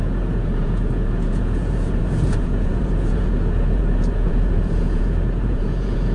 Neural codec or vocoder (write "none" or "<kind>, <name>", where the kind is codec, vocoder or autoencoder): vocoder, Vocos